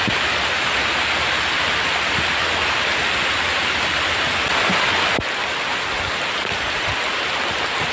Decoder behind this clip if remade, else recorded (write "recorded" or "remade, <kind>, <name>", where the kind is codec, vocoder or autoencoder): recorded